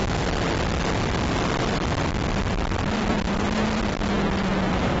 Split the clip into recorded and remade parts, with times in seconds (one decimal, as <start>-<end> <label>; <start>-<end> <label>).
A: 0.0-2.3 recorded; 2.3-5.0 remade